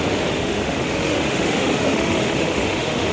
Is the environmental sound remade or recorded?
remade